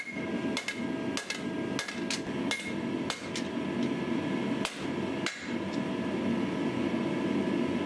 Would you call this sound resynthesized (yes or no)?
no